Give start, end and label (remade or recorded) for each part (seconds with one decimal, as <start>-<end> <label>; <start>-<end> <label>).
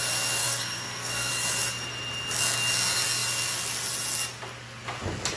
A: 0.0-0.4 recorded; 0.4-1.3 remade; 1.3-5.4 recorded